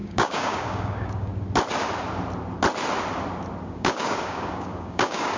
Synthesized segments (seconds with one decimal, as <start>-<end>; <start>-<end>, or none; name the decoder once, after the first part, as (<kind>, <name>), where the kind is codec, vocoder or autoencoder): 0.0-1.3 (codec, DAC); 3.6-5.4